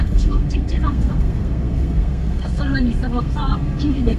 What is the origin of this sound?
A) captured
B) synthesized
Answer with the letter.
B